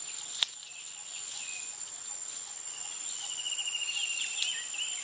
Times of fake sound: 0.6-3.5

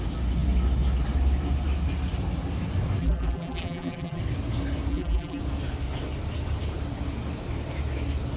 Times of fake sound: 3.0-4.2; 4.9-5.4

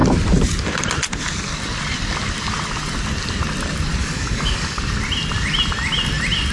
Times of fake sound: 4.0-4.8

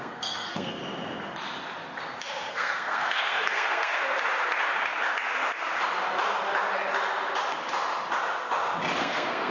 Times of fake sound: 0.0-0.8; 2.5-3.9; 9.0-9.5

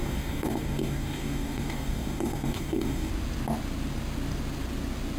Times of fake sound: 0.0-3.1